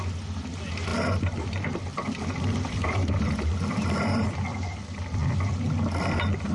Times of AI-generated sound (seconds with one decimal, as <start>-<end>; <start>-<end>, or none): 0.9-4.8